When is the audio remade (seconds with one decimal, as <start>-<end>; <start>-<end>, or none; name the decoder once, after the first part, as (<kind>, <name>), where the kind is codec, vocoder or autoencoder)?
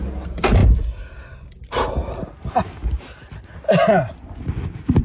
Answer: none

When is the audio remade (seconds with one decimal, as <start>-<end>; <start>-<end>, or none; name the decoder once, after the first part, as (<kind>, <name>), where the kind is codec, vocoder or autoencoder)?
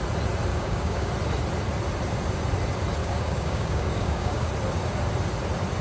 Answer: 0.5-1.1 (codec, DAC); 3.0-4.5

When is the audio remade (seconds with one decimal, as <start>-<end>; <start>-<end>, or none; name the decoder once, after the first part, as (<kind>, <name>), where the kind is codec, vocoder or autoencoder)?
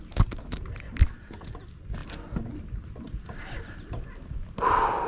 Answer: none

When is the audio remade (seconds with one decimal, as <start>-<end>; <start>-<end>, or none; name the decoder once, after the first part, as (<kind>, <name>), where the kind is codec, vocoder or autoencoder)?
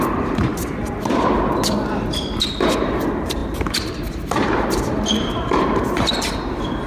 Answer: 0.0-0.5 (vocoder, BigVGAN v2); 2.8-6.9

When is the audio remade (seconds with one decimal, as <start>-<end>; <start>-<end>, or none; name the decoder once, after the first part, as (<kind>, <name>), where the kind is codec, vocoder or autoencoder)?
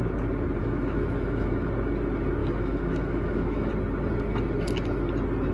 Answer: 0.6-1.7 (autoencoder, DAC-VAE); 2.4-3.7